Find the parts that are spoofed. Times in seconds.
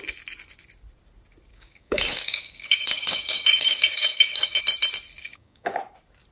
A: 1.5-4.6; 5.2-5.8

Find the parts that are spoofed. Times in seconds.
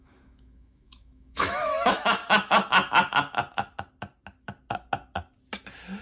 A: 0.0-2.2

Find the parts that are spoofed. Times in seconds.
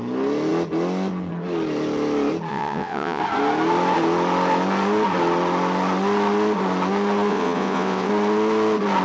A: 2.5-3.2; 7.3-8.1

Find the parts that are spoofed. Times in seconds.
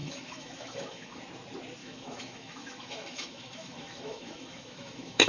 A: 0.0-1.2; 1.8-5.3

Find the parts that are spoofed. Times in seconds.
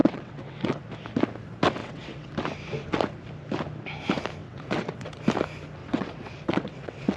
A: 0.0-0.8; 1.8-2.3; 4.4-5.1; 5.8-7.2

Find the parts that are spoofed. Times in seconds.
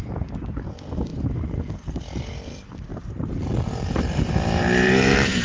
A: 2.9-5.4